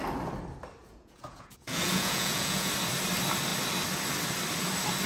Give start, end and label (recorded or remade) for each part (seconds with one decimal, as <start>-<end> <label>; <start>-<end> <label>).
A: 0.0-0.8 recorded; 0.8-2.7 remade; 2.7-5.1 recorded